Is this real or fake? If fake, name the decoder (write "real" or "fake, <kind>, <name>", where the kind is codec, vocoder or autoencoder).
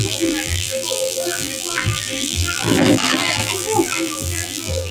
fake, vocoder, BigVGAN v2